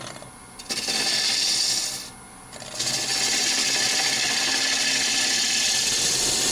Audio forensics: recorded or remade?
recorded